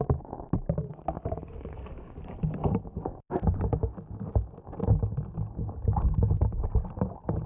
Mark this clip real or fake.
real